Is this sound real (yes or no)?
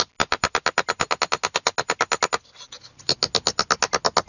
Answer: yes